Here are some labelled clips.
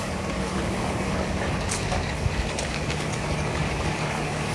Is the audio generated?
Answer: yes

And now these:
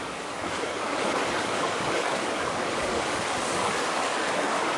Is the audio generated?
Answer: yes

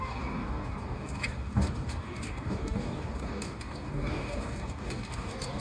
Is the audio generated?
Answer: yes